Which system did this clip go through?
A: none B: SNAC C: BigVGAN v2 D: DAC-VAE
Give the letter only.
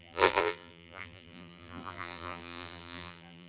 C